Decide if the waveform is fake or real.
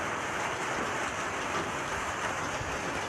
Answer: real